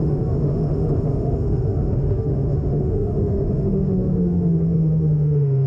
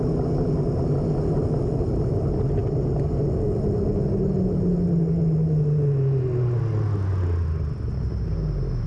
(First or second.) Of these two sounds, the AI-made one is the first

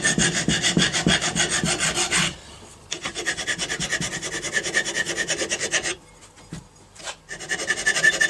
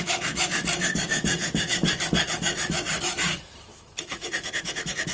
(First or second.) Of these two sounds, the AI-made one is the second